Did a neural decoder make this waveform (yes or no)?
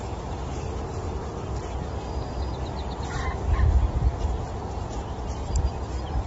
no